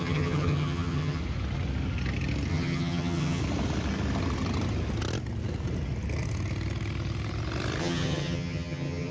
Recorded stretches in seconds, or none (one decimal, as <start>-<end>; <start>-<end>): 1.2-2.5; 3.4-7.8